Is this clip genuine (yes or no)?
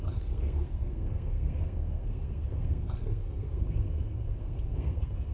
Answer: no